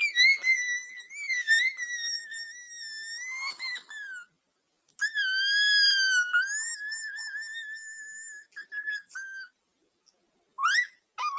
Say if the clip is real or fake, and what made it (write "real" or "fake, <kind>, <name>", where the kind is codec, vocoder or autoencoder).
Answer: real